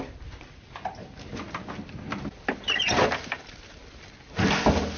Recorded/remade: recorded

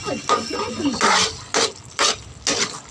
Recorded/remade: recorded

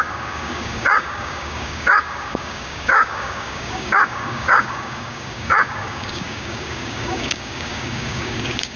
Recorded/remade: remade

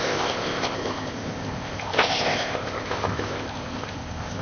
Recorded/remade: remade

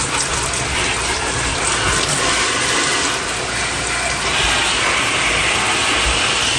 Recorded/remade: recorded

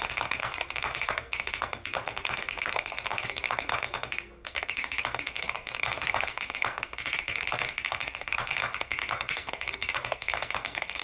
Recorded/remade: remade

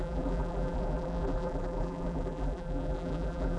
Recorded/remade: remade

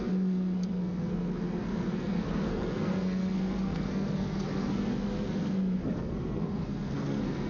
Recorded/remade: remade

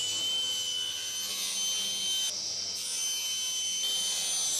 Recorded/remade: recorded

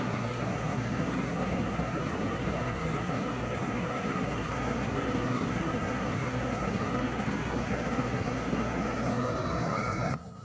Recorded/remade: remade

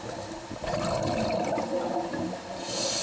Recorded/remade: recorded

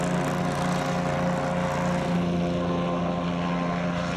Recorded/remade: recorded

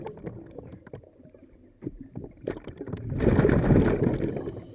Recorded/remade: recorded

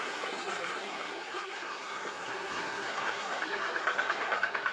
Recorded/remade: remade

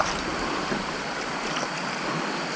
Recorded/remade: recorded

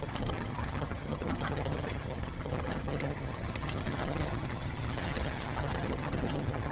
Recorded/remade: remade